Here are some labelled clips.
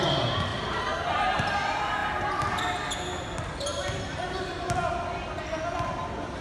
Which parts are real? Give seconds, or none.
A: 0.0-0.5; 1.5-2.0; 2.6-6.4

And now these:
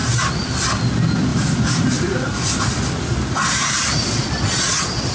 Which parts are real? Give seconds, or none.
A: 0.9-1.3; 4.4-5.1